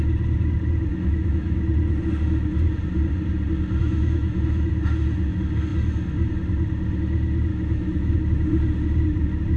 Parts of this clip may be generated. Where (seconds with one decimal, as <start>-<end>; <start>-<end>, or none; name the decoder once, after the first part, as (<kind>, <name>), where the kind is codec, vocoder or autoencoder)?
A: 0.9-1.6 (autoencoder, DAC-VAE); 3.8-4.7; 7.5-8.2